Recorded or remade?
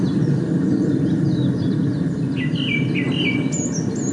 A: recorded